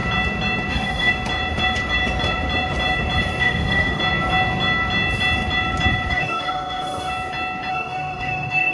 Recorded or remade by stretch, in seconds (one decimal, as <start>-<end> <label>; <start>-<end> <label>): 0.0-0.7 recorded; 0.7-1.1 remade; 1.1-3.4 recorded; 3.4-4.0 remade; 4.0-6.1 recorded; 6.1-7.1 remade; 7.1-7.7 recorded; 7.7-8.7 remade